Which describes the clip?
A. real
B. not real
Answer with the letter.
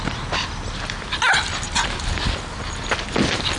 A